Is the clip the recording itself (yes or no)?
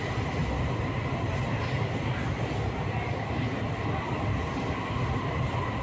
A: yes